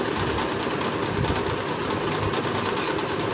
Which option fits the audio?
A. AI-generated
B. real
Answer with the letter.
B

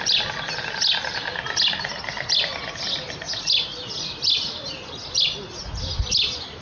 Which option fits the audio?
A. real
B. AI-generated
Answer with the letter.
A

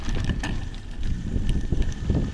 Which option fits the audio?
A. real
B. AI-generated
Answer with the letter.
A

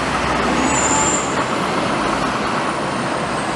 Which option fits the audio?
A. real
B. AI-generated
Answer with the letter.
A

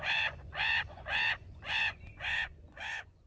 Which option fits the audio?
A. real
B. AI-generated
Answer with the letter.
B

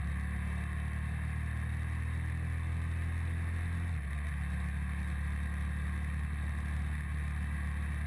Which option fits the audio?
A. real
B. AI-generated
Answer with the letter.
A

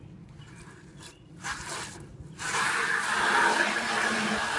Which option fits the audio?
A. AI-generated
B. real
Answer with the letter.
B